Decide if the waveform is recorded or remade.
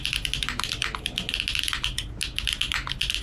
recorded